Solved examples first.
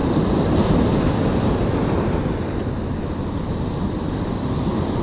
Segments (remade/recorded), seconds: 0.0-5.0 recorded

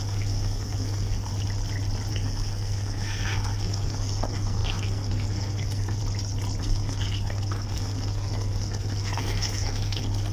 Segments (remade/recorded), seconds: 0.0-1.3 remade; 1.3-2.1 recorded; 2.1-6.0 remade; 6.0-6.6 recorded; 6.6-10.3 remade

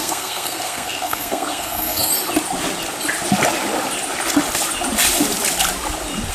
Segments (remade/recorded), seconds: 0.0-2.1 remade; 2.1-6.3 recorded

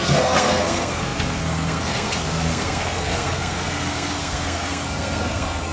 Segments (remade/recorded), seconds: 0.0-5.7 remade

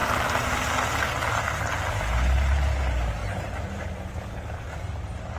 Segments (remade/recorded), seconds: 0.0-5.4 recorded

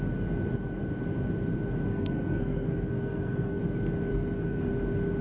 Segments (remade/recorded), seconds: 0.0-1.9 recorded; 1.9-3.6 remade; 3.6-4.1 recorded; 4.1-4.7 remade; 4.7-5.2 recorded